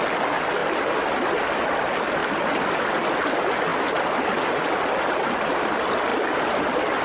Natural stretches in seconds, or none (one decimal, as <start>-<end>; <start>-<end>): 0.0-7.0